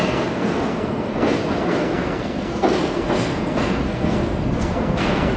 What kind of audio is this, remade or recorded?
remade